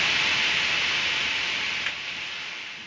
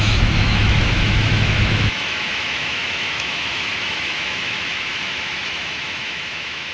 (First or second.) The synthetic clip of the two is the second